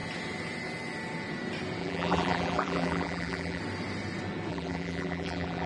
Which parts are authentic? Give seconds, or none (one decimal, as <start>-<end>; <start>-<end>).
0.0-1.8; 3.6-4.5